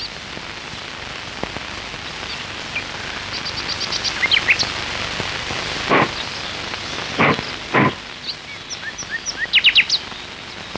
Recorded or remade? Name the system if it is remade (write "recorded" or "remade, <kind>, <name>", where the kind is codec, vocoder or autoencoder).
recorded